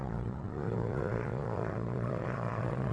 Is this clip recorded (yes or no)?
no